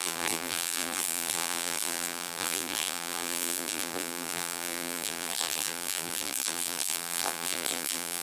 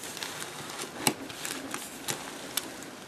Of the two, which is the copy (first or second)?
first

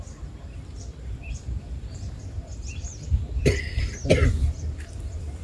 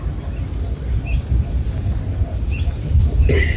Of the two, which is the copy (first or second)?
first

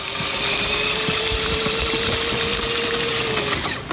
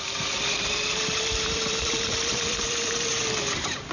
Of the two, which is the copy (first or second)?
second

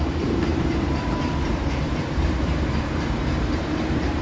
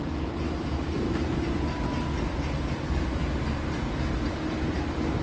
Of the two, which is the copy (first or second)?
first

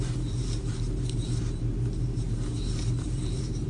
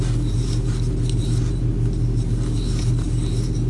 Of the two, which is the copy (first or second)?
first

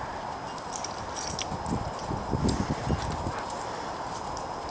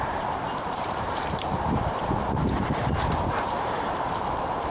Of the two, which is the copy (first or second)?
second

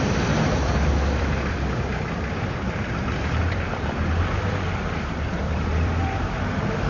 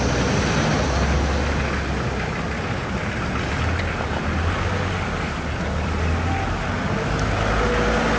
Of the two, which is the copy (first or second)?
first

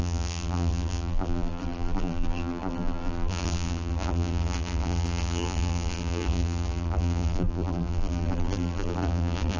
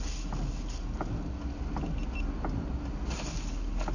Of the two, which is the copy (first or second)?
first